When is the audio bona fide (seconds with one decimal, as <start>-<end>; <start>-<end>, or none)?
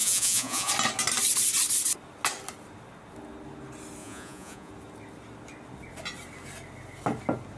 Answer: 0.7-4.0; 4.7-7.6